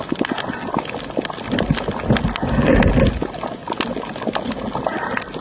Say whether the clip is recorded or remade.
recorded